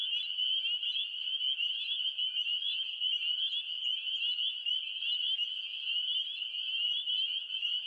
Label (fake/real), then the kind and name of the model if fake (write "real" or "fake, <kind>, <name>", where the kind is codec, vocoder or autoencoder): real